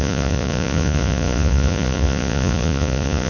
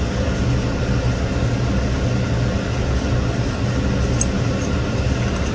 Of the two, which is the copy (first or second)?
first